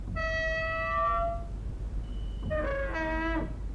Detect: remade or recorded recorded